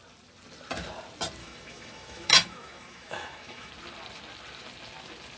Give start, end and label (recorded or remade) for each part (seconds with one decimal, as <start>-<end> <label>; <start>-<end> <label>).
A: 0.0-1.4 recorded; 1.4-3.7 remade; 3.7-5.4 recorded